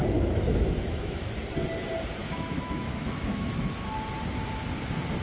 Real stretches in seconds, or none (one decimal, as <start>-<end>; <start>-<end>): 1.4-2.2; 3.5-5.2